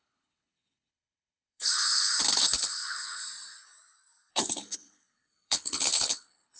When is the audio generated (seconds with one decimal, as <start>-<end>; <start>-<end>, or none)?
0.0-3.2; 4.3-6.6